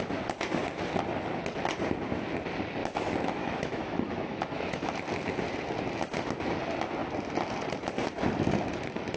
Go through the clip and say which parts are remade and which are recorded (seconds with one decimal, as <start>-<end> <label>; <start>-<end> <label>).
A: 0.0-2.8 recorded; 2.8-4.9 remade; 4.9-9.2 recorded